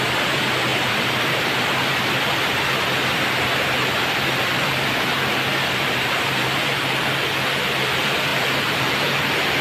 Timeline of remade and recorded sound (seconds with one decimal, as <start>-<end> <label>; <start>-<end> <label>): 0.0-0.7 recorded; 0.7-2.1 remade; 2.1-5.5 recorded; 5.5-6.6 remade; 6.6-9.6 recorded